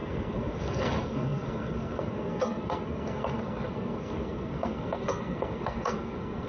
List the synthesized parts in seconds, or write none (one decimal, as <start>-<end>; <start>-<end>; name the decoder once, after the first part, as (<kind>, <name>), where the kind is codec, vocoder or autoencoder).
0.0-6.5 (codec, SNAC)